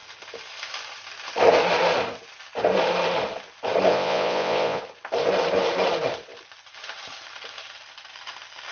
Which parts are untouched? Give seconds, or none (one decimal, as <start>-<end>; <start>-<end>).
0.0-3.9; 4.8-8.7